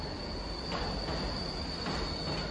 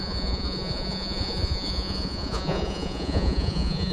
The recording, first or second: first